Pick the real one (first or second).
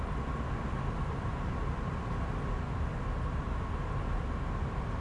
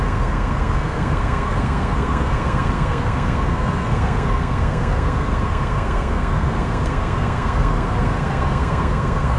first